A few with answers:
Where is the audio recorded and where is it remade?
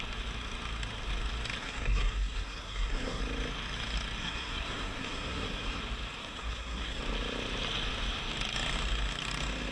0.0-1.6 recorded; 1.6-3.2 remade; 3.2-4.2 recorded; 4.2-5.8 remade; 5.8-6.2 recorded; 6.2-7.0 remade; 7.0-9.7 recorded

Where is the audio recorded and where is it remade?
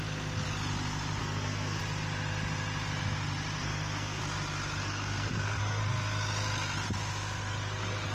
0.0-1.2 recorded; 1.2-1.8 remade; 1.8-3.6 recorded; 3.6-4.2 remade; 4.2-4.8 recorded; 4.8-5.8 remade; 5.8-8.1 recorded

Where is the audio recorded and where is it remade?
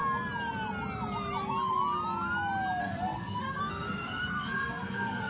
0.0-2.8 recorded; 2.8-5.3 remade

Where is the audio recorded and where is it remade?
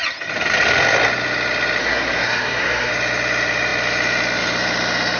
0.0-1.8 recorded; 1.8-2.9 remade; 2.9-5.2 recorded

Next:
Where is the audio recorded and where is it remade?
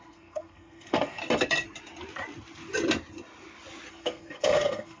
0.0-1.2 remade; 1.2-3.9 recorded; 3.9-5.0 remade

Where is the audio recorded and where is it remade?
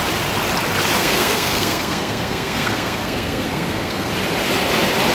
0.0-1.0 recorded; 1.0-4.1 remade; 4.1-5.1 recorded